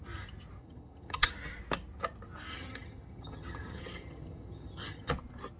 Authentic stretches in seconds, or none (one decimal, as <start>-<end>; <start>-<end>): 0.0-0.6; 1.3-2.5; 5.1-5.6